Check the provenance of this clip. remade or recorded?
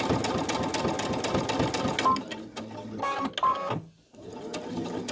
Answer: recorded